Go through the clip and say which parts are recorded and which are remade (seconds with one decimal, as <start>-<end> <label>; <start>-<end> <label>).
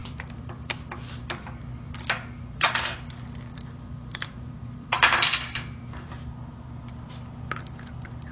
0.0-0.8 remade; 0.8-3.5 recorded; 3.5-5.9 remade; 5.9-8.3 recorded